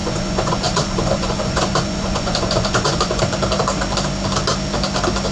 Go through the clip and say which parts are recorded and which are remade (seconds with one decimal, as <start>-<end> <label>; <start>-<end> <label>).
0.0-3.2 remade; 3.2-5.3 recorded